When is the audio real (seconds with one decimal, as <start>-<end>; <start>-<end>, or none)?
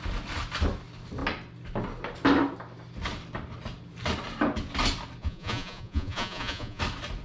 0.0-5.2; 6.8-7.2